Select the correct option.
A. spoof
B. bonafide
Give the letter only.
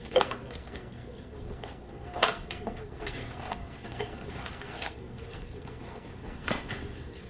A